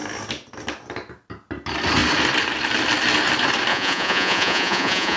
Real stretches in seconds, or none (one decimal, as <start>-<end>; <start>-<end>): 0.0-3.7